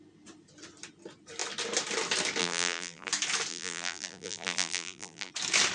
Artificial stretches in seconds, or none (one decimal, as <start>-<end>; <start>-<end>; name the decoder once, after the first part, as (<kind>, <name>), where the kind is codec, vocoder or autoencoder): 2.4-3.1 (vocoder, BigVGAN v2); 3.5-5.3